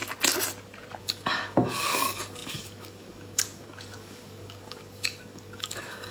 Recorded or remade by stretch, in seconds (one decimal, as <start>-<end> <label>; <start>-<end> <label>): 0.0-1.0 recorded; 1.0-6.1 remade